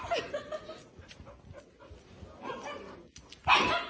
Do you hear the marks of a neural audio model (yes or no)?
no